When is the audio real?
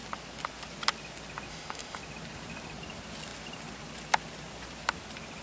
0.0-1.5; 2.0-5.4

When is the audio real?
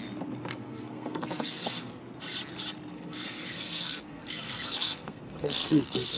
0.0-0.5; 2.0-2.9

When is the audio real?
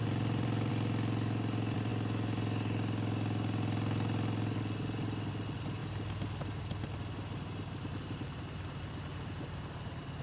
0.7-10.2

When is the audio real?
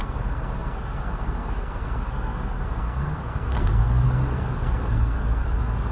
none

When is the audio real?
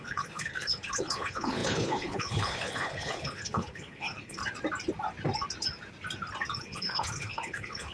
4.4-6.6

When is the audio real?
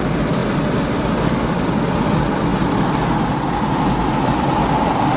0.0-5.2